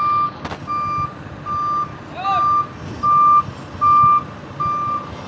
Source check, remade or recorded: recorded